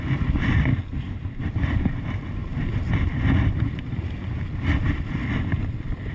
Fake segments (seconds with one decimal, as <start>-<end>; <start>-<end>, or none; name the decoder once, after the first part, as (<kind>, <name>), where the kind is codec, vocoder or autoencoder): 0.0-0.7 (vocoder, BigVGAN v2); 1.4-5.2